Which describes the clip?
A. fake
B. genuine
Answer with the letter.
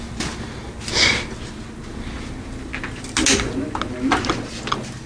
B